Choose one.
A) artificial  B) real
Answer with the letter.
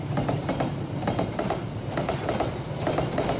B